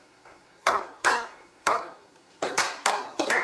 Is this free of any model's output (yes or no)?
no